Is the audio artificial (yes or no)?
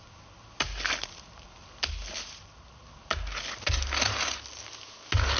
no